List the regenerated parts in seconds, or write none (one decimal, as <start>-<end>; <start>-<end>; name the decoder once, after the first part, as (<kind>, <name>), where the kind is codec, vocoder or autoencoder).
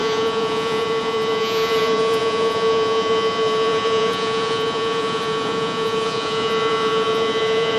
0.0-7.8 (vocoder, Vocos)